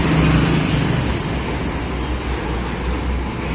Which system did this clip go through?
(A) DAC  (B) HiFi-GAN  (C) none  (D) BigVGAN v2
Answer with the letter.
C